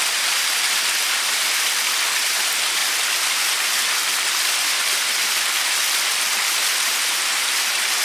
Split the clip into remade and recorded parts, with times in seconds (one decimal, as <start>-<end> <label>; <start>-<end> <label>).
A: 0.0-8.0 recorded